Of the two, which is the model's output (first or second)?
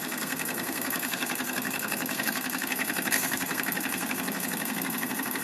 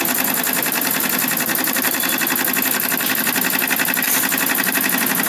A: first